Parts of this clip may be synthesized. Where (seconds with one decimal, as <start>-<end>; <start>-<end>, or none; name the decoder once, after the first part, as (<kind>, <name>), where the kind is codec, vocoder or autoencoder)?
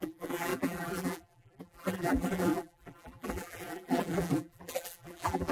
0.0-5.5 (vocoder, BigVGAN v2)